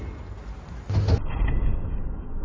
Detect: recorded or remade recorded